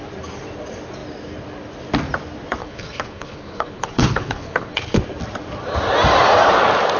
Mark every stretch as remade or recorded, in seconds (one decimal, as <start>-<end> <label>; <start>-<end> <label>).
0.0-2.6 recorded; 2.6-5.0 remade; 5.0-7.0 recorded